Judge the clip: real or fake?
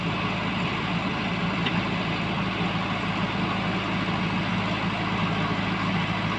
real